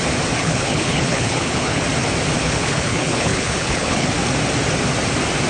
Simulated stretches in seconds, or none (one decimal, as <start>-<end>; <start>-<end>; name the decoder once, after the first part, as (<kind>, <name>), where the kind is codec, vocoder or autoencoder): 0.4-1.8 (codec, HILCodec); 2.4-4.1